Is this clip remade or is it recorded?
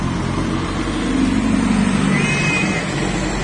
recorded